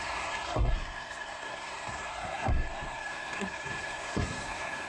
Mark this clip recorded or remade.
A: remade